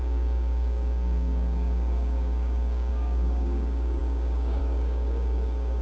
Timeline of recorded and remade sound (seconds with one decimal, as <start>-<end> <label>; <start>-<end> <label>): 0.0-5.8 remade